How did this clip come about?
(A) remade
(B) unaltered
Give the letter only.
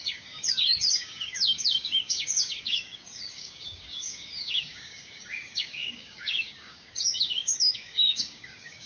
A